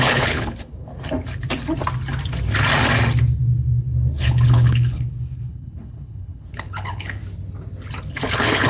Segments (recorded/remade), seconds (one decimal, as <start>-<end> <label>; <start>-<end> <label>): 0.0-0.9 remade; 0.9-4.1 recorded; 4.1-7.2 remade; 7.2-8.0 recorded; 8.0-8.7 remade